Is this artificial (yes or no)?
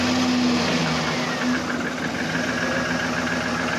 no